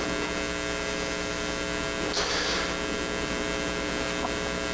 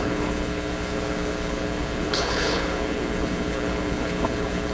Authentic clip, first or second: first